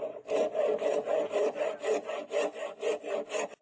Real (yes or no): yes